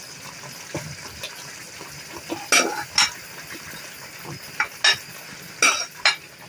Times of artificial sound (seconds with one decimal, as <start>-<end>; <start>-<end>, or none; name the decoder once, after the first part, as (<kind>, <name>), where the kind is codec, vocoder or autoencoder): none